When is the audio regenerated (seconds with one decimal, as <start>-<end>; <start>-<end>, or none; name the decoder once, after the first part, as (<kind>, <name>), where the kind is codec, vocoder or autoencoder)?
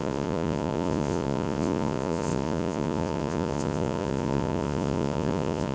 0.0-5.7 (vocoder, Vocos)